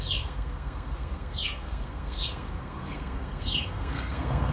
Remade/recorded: remade